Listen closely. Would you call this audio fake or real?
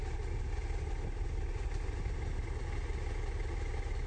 real